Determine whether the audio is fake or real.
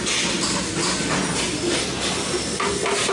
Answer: real